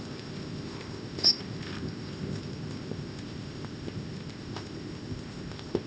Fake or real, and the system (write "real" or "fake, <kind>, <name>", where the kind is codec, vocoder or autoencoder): fake, codec, ZipCodec